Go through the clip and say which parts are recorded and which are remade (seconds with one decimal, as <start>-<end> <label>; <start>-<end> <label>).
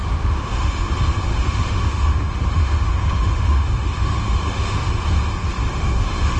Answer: 0.0-0.8 remade; 0.8-1.3 recorded; 1.3-4.9 remade; 4.9-5.6 recorded; 5.6-6.4 remade